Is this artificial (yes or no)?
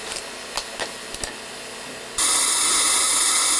no